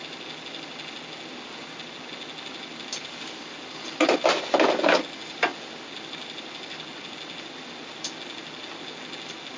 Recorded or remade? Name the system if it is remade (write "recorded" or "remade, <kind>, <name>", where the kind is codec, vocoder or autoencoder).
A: recorded